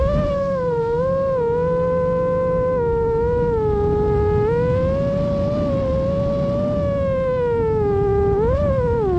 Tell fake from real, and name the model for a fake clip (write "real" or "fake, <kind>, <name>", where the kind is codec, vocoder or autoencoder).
real